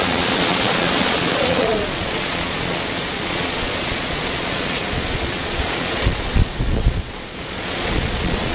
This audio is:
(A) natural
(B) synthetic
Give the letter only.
B